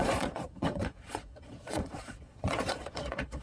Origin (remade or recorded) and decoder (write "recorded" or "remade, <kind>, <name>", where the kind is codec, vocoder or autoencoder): remade, vocoder, Vocos